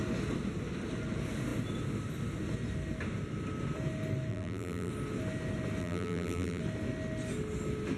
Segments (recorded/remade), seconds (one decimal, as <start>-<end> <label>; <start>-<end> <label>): 0.0-4.3 recorded; 4.3-4.9 remade; 4.9-5.8 recorded; 5.8-6.6 remade; 6.6-8.0 recorded